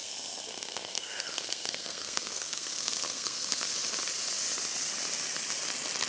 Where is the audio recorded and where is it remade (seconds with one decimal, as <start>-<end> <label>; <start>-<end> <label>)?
0.0-3.7 remade; 3.7-6.1 recorded